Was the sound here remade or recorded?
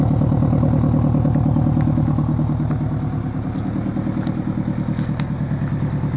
recorded